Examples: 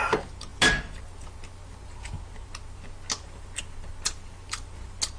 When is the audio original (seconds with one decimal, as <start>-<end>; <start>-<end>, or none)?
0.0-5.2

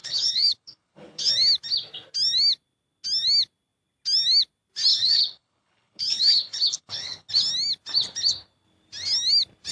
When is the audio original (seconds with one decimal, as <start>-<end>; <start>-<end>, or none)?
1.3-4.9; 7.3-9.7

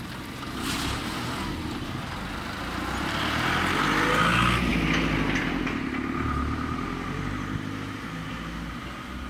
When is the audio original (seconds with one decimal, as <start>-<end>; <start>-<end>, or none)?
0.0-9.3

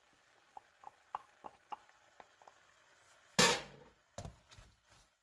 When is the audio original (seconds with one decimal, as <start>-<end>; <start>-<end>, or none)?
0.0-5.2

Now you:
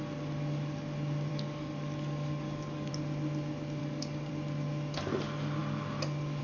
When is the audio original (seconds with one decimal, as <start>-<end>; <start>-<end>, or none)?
0.0-1.3; 2.9-3.8; 4.3-6.4

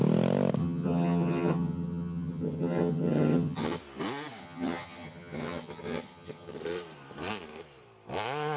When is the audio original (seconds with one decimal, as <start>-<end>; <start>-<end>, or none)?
0.0-0.6; 3.8-4.4; 6.6-8.6